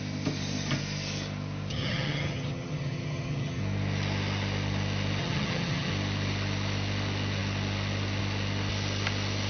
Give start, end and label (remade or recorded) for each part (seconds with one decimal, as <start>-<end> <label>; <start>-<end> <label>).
0.0-1.7 recorded; 1.7-3.6 remade; 3.6-5.2 recorded; 5.2-5.9 remade; 5.9-9.5 recorded